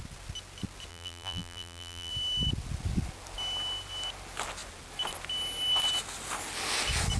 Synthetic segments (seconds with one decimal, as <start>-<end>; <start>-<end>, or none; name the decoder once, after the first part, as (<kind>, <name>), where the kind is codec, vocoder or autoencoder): 0.9-2.1 (vocoder, BigVGAN v2)